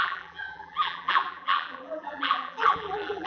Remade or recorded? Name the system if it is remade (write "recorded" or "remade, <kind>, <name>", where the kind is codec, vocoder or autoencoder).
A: remade, vocoder, BigVGAN v2